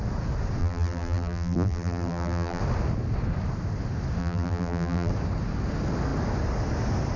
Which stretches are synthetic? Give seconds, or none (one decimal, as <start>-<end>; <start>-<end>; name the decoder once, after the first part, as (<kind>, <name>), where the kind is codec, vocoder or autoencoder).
0.6-2.6 (vocoder, BigVGAN v2); 4.2-5.1